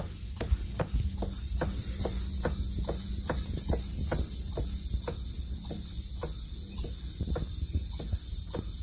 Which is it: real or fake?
real